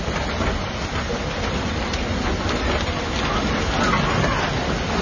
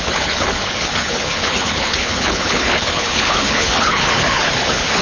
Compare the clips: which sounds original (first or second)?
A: first